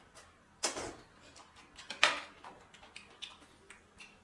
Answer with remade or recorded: recorded